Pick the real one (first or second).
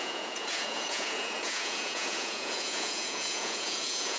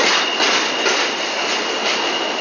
second